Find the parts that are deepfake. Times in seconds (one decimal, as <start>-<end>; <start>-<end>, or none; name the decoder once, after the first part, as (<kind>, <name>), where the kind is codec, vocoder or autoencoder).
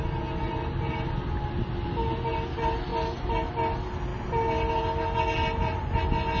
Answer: none